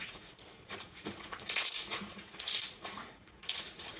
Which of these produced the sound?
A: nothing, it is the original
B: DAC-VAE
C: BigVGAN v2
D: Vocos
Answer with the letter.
D